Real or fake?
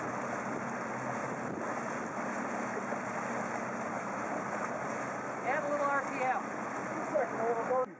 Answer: real